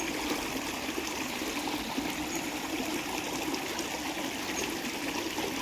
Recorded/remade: recorded